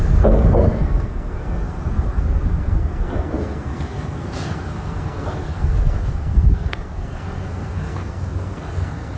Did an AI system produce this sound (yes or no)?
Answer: yes